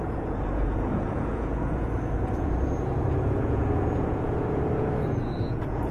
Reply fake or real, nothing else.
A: fake